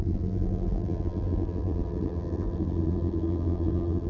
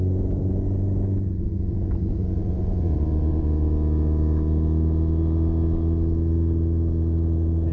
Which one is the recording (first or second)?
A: second